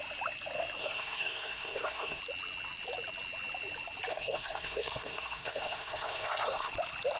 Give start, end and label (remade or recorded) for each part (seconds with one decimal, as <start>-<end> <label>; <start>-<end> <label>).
0.0-0.8 recorded; 0.8-2.2 remade; 2.2-4.1 recorded; 4.1-6.7 remade; 6.7-7.2 recorded